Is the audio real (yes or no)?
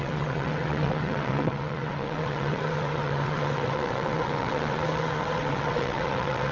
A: no